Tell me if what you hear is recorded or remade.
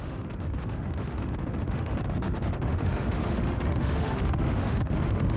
remade